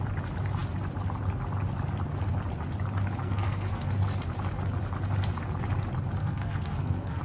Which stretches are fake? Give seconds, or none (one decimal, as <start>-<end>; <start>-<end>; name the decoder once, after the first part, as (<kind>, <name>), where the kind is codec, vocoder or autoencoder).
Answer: 3.2-3.9 (codec, SNAC); 6.2-7.2